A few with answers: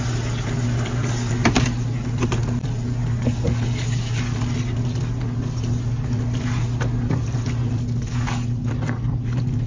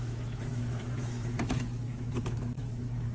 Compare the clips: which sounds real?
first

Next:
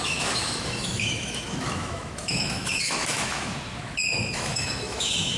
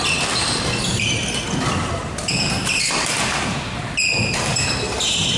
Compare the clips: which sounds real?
second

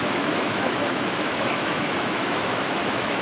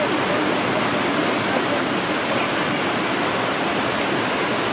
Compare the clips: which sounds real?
second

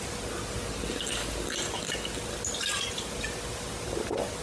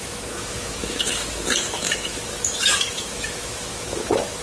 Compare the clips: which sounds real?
first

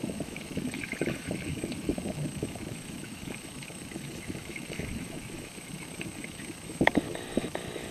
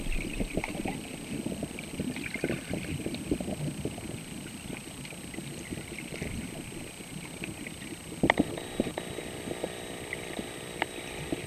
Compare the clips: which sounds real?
second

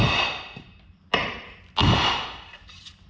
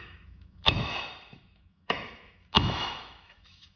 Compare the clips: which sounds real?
first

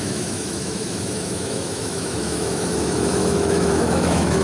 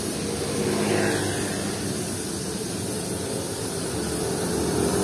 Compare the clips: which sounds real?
second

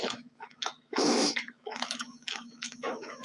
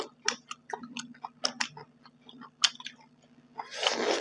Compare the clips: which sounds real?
second